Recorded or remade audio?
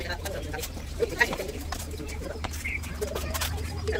remade